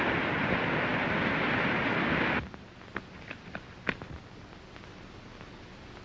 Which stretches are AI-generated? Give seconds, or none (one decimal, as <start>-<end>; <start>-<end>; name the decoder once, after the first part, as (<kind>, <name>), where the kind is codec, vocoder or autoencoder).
none